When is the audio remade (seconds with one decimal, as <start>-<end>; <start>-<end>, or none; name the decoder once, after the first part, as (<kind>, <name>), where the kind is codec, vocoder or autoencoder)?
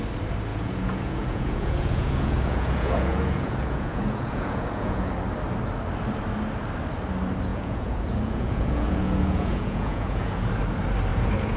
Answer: 0.5-5.1 (vocoder, Vocos); 7.5-10.5; 11.1-11.6